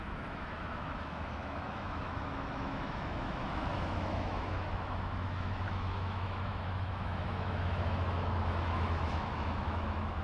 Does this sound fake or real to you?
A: fake